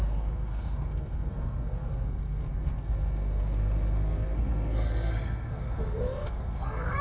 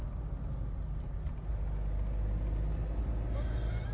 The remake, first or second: first